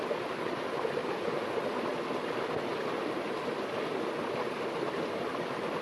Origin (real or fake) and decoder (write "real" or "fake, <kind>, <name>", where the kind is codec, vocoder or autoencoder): real